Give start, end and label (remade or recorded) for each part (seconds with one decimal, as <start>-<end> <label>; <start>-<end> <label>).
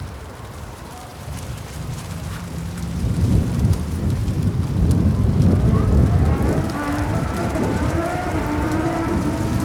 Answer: 0.0-4.2 remade; 4.2-6.9 recorded; 6.9-9.6 remade